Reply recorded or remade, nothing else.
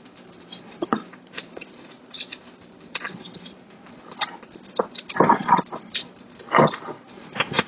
remade